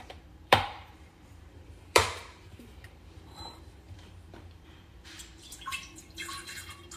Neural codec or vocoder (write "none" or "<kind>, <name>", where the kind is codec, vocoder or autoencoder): vocoder, BigVGAN v2